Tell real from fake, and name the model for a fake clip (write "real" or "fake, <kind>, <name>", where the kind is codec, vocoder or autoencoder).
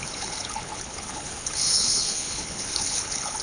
fake, codec, HILCodec